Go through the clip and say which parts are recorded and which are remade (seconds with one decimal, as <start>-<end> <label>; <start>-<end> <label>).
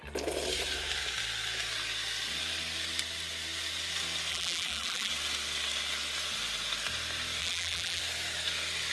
0.0-4.3 recorded; 4.3-5.1 remade; 5.1-7.4 recorded; 7.4-8.0 remade; 8.0-8.9 recorded